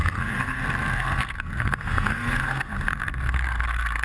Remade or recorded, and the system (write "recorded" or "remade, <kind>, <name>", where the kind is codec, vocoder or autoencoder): remade, codec, SNAC